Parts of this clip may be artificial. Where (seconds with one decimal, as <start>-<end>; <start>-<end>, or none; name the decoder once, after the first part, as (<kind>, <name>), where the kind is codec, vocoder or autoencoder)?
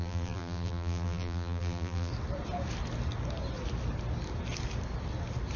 0.0-2.1 (vocoder, BigVGAN v2)